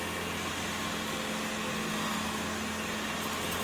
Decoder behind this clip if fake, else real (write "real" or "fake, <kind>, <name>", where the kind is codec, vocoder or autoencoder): real